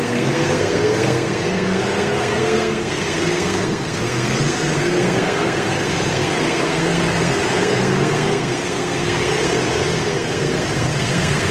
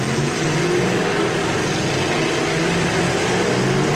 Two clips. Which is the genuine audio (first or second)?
second